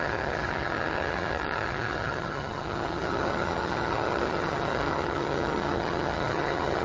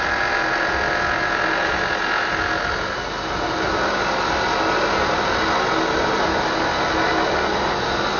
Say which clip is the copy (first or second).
first